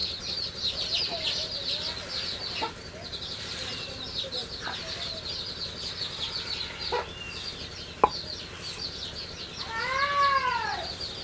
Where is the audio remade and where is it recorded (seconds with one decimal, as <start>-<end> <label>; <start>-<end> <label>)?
0.0-11.2 recorded